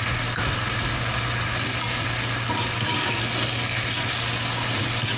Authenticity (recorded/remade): recorded